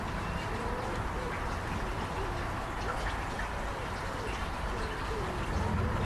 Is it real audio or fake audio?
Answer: real